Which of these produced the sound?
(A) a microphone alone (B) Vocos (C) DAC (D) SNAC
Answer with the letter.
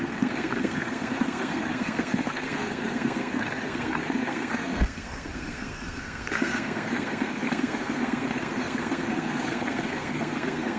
D